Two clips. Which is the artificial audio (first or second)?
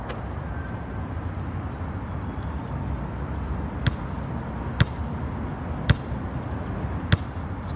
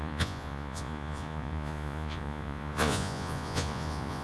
second